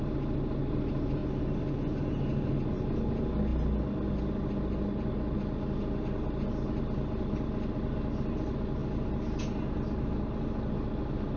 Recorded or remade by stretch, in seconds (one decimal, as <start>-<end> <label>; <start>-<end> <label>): 0.0-11.4 recorded

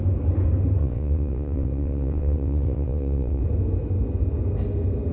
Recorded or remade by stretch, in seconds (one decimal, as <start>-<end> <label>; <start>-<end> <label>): 0.0-0.8 recorded; 0.8-3.4 remade; 3.4-5.1 recorded

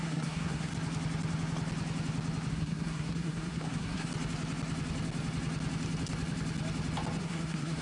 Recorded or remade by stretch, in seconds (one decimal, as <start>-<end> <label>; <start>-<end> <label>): 0.0-0.7 remade; 0.7-2.5 recorded; 2.5-4.1 remade; 4.1-7.2 recorded; 7.2-7.8 remade

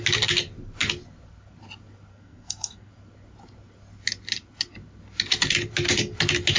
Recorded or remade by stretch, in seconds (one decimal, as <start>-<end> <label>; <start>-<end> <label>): 0.0-2.1 recorded; 2.1-2.9 remade; 2.9-6.6 recorded

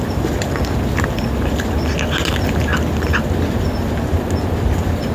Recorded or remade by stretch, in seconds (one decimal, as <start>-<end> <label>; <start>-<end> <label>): 0.0-5.1 recorded

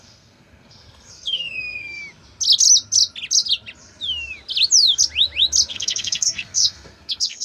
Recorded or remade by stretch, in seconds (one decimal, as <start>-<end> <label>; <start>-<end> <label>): 0.0-2.0 remade; 2.0-5.7 recorded; 5.7-7.4 remade

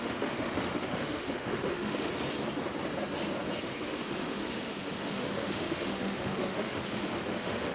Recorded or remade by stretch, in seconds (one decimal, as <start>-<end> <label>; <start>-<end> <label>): 0.0-2.1 remade; 2.1-3.6 recorded; 3.6-7.7 remade